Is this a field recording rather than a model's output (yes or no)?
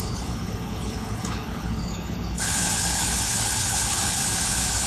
no